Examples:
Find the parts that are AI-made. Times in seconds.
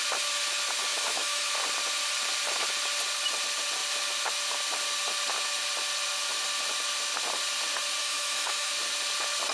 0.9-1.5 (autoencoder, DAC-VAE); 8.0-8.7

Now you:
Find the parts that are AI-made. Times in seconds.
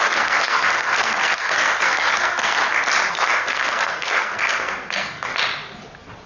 0.0-2.6 (codec, SNAC); 3.1-5.3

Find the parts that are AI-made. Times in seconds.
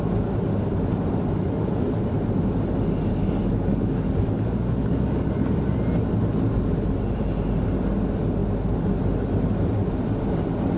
3.1-5.3 (codec, DAC)